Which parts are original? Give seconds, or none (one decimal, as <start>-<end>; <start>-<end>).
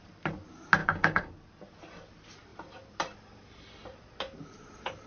0.0-0.8; 1.3-5.1